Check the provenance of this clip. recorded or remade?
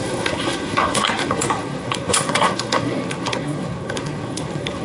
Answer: remade